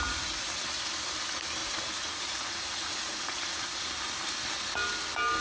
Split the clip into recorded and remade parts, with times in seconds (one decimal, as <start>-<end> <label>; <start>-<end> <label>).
0.0-1.6 recorded; 1.6-3.9 remade; 3.9-5.4 recorded